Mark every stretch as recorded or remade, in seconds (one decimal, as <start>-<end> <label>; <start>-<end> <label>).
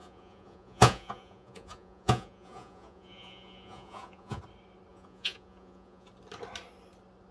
0.0-4.4 remade; 4.4-4.9 recorded; 4.9-6.1 remade; 6.1-7.3 recorded